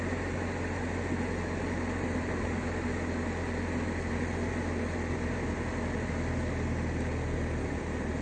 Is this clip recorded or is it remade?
recorded